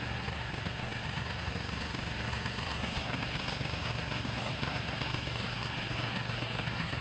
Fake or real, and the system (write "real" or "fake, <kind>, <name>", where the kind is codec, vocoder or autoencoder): fake, codec, SNAC